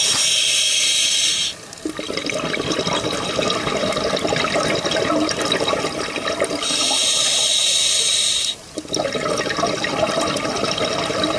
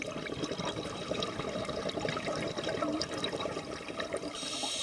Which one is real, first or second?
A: first